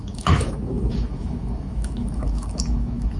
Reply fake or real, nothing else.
fake